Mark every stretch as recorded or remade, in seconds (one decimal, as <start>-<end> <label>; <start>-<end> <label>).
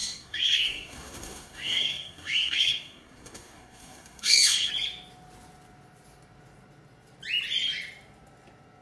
0.0-4.7 remade; 4.7-8.8 recorded